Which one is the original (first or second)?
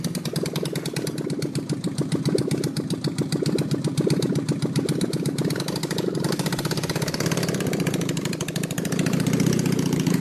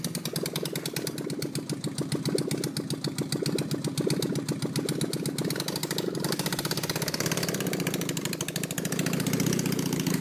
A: second